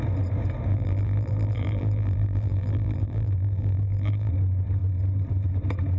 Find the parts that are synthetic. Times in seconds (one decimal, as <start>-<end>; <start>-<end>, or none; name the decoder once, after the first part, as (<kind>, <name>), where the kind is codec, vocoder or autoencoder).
0.7-4.3 (vocoder, BigVGAN v2)